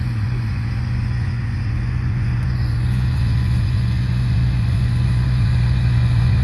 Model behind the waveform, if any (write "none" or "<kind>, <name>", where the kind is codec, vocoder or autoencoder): vocoder, Vocos